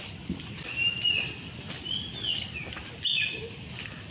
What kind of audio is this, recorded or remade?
recorded